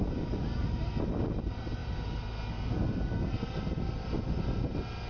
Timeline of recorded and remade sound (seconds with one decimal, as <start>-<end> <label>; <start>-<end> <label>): 0.0-5.1 recorded